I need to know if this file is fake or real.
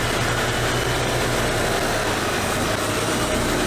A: real